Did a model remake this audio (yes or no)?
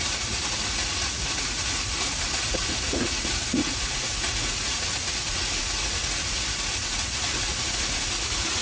yes